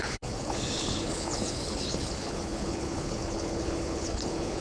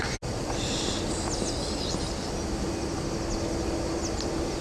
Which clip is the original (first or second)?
second